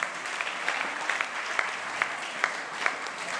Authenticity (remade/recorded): recorded